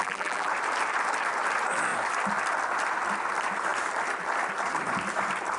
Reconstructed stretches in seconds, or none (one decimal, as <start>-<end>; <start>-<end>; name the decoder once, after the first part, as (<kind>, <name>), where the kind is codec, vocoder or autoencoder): 0.0-0.5 (vocoder, BigVGAN v2)